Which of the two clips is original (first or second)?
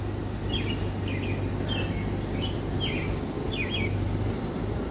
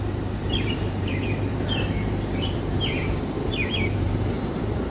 first